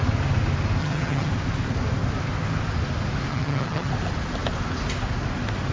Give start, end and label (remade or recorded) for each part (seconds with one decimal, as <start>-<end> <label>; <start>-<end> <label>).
0.0-0.8 recorded; 0.8-1.3 remade; 1.3-3.3 recorded; 3.3-3.9 remade; 3.9-5.7 recorded